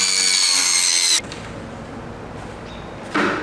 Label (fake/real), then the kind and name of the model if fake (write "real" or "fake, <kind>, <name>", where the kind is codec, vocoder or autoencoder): real